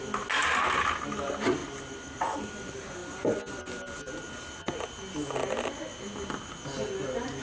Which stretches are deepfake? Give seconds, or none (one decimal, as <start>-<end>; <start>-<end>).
none